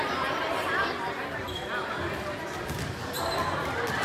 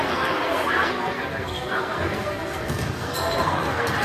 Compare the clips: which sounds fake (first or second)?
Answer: second